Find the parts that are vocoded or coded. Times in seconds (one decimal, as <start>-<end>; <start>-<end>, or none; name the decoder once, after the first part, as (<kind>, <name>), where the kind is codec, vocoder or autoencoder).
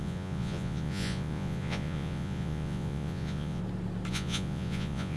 0.0-3.6 (vocoder, Vocos); 4.1-5.2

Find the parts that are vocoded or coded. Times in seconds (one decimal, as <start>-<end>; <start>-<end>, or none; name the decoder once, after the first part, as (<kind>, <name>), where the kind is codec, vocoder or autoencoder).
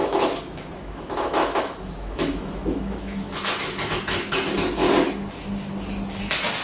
0.0-4.0 (autoencoder, DAC-VAE)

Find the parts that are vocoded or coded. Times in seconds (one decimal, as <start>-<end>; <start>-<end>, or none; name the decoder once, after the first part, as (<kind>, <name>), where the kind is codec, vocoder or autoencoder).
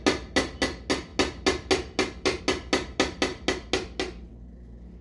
none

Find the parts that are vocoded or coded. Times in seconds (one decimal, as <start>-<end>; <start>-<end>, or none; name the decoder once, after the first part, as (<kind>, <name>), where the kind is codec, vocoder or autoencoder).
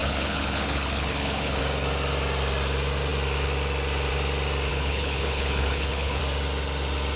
0.0-1.6 (codec, HILCodec); 4.7-6.2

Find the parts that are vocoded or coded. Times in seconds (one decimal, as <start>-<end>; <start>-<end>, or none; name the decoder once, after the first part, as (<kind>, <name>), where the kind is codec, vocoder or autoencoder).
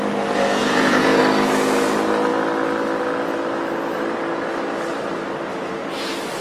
0.6-1.2 (vocoder, Vocos)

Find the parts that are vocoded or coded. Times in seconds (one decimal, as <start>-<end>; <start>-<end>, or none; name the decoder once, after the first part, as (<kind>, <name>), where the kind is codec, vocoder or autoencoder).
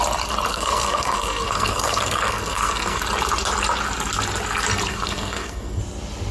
0.5-3.0 (codec, SNAC); 4.9-5.8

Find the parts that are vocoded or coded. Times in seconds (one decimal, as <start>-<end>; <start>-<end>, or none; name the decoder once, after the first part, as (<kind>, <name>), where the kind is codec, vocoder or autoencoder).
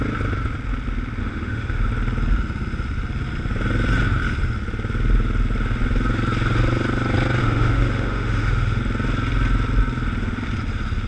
1.2-1.9 (autoencoder, DAC-VAE); 7.4-8.8